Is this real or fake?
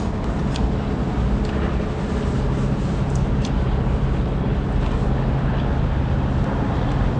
real